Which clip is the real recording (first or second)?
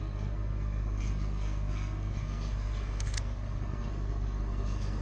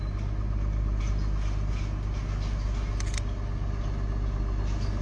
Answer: second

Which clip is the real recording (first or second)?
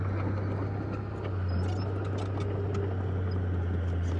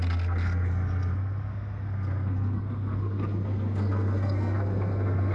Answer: first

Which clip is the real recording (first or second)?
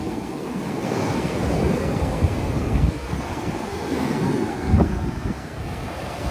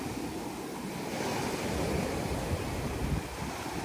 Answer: second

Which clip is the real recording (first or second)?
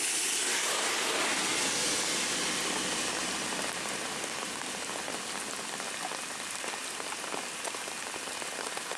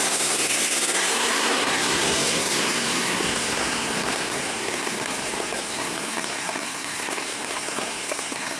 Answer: first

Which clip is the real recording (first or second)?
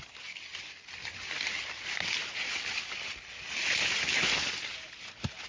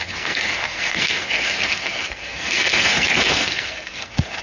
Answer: first